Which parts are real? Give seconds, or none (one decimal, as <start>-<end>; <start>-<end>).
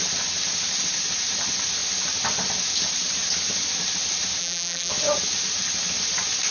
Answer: 0.0-4.4; 4.9-6.5